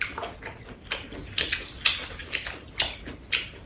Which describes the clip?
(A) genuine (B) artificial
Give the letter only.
A